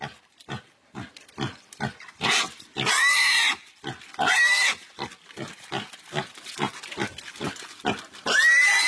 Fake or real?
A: real